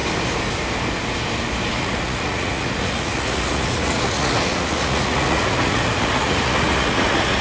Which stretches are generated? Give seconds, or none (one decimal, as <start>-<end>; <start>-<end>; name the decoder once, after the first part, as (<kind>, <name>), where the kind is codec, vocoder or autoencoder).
1.8-7.4 (vocoder, Vocos)